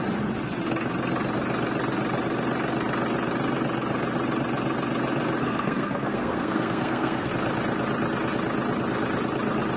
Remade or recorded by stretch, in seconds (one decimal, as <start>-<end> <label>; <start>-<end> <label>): 0.0-5.4 recorded; 5.4-7.3 remade; 7.3-9.8 recorded